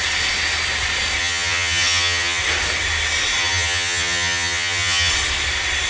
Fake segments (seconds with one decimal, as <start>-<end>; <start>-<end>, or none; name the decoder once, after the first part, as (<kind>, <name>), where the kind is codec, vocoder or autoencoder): 1.2-2.4 (vocoder, HiFi-GAN); 3.4-5.1